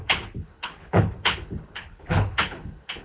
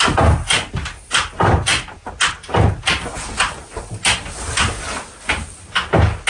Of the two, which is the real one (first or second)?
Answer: second